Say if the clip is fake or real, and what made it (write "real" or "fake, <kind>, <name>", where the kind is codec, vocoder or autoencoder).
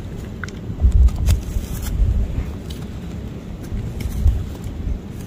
real